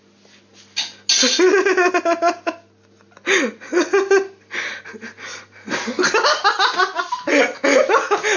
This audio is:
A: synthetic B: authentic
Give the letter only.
B